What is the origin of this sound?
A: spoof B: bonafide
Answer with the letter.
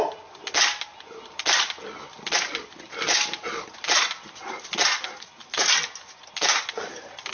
B